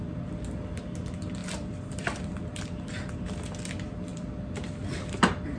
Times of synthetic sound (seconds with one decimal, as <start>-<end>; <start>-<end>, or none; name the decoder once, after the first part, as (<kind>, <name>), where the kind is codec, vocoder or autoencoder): 1.4-3.4 (vocoder, BigVGAN v2); 4.1-5.6